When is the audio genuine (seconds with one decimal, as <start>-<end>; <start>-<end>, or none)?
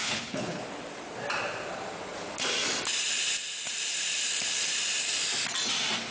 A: 0.6-6.1